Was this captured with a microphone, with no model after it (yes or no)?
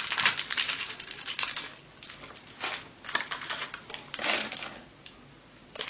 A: yes